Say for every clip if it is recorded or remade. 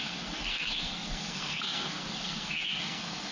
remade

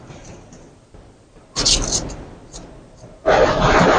recorded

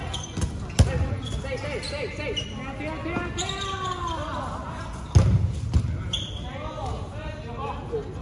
recorded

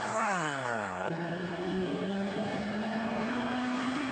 remade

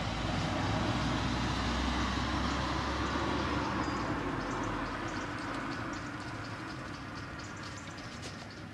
recorded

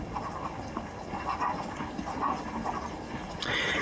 recorded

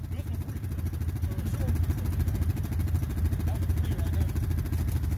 recorded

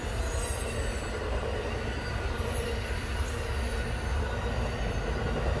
recorded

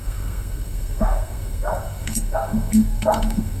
remade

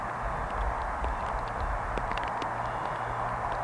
recorded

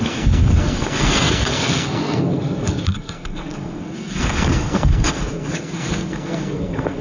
remade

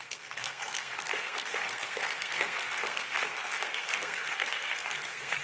remade